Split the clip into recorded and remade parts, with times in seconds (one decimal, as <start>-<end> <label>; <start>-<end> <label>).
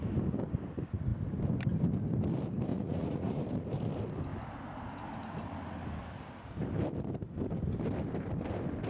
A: 0.0-2.7 recorded; 2.7-3.4 remade; 3.4-8.9 recorded